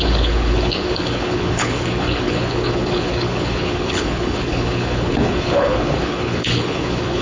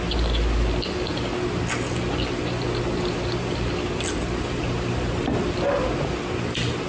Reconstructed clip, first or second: first